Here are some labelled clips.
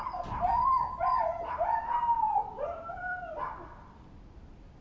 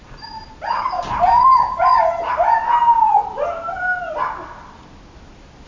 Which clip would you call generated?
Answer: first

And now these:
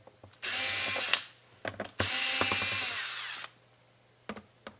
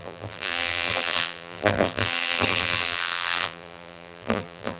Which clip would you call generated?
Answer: second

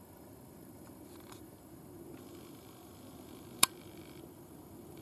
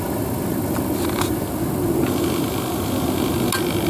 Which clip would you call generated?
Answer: first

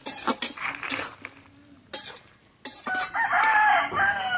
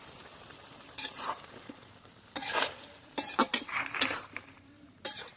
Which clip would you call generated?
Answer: second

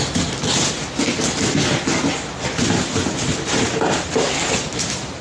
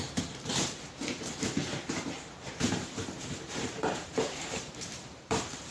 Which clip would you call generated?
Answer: second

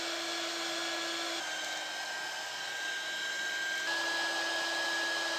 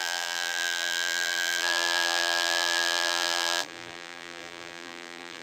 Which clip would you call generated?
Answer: second